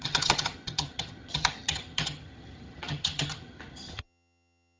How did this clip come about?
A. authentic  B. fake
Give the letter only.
B